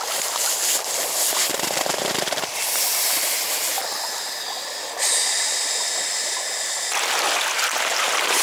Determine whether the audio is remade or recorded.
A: recorded